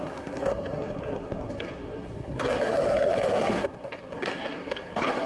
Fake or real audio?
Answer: fake